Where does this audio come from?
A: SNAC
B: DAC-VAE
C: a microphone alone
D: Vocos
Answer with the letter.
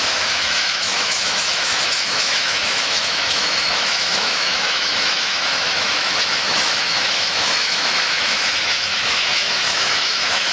B